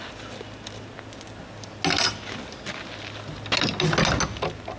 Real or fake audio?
real